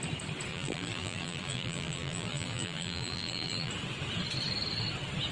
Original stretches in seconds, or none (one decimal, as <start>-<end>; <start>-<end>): 0.0-0.5; 3.7-5.3